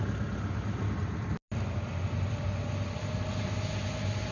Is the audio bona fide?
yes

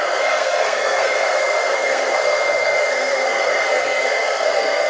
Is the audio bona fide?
no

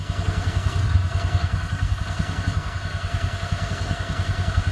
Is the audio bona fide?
no